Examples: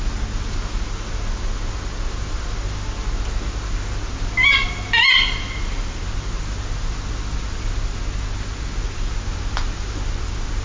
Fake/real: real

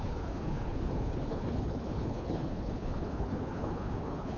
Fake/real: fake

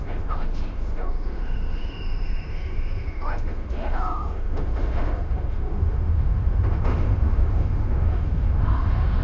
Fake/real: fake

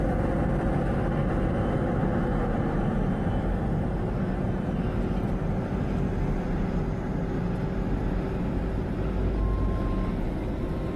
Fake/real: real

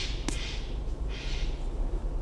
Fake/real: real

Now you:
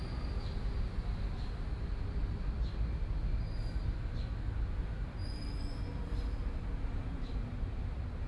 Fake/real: real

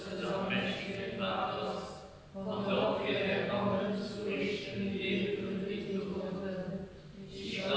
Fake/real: real